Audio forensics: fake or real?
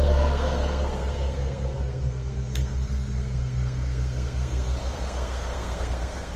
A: fake